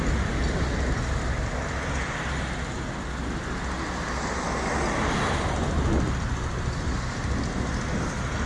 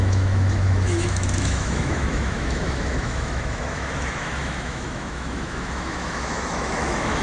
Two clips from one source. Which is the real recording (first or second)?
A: first